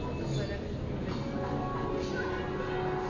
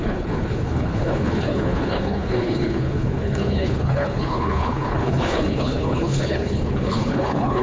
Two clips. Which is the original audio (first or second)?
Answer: first